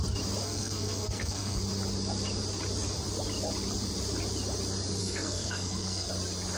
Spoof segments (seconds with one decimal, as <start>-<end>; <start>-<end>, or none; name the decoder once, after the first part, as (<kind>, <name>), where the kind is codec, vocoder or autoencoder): 0.4-1.6 (codec, SNAC); 5.0-6.1